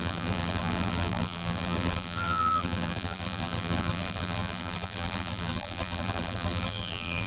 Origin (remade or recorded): remade